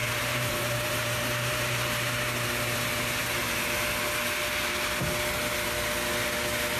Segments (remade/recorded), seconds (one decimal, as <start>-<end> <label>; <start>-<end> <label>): 0.0-2.2 remade; 2.2-6.8 recorded